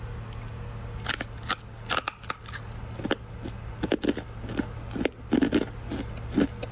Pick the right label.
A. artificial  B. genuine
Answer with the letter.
B